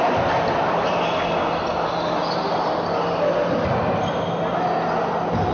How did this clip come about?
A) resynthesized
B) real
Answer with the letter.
B